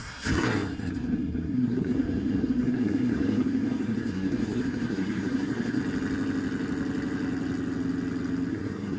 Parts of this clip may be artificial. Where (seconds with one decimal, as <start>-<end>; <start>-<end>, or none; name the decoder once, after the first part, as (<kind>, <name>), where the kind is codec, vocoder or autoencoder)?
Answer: 0.0-5.8 (codec, SNAC); 8.5-9.0